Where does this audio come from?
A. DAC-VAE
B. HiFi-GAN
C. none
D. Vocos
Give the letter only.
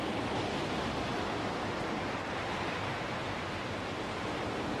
C